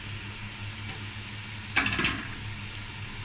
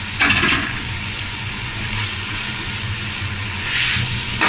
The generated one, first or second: second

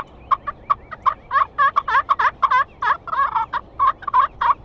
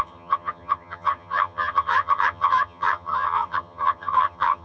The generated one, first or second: second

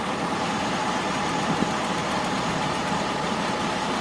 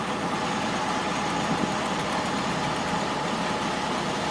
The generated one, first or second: first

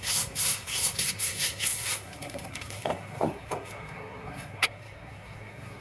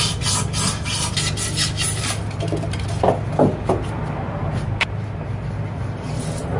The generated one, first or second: first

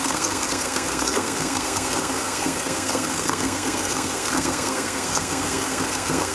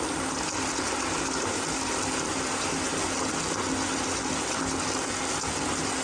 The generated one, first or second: first